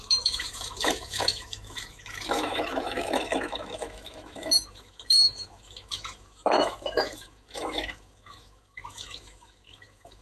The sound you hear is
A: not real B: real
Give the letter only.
A